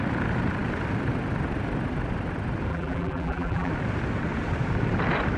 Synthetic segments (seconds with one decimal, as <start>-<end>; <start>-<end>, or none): 2.7-3.7

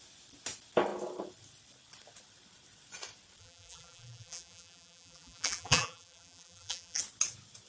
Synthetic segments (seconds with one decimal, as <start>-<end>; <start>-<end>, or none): 3.4-7.0

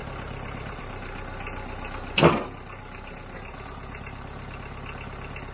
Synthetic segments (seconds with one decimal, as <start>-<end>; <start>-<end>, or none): 0.0-0.8

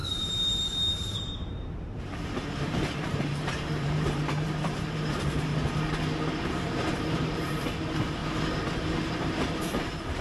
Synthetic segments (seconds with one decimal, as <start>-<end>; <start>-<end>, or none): 0.0-5.5; 6.3-8.2; 9.1-10.2

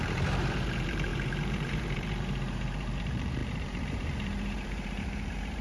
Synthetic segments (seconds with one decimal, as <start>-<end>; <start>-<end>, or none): 0.0-5.6

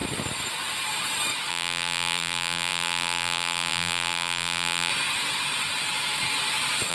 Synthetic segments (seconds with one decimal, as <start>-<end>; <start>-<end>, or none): 1.5-4.9

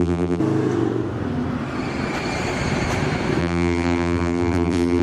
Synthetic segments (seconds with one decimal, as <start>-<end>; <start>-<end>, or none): 0.0-0.4; 3.4-5.0

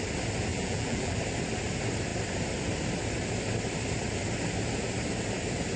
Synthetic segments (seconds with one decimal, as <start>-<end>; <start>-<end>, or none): 0.5-1.2